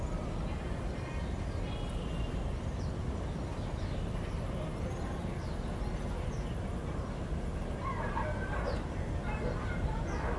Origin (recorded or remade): recorded